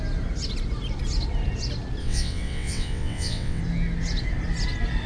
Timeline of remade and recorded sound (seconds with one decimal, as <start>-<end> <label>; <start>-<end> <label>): 0.0-2.0 recorded; 2.0-3.6 remade; 3.6-5.1 recorded